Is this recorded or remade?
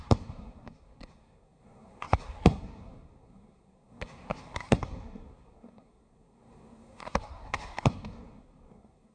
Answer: remade